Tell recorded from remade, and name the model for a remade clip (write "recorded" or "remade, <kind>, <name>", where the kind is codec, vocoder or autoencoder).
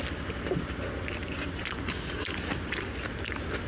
recorded